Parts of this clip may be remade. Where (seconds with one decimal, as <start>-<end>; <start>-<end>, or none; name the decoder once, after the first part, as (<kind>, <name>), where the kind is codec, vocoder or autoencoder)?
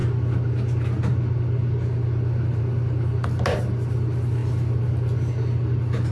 none